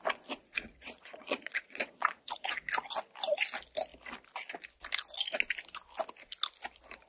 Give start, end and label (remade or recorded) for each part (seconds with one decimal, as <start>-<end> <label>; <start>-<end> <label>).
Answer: 0.0-0.5 recorded; 0.5-2.7 remade; 2.7-7.1 recorded